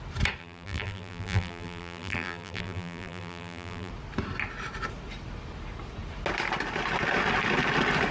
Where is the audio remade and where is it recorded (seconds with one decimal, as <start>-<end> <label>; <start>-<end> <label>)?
0.0-0.4 recorded; 0.4-3.9 remade; 3.9-8.1 recorded